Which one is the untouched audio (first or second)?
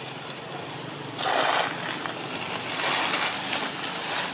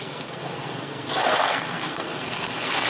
first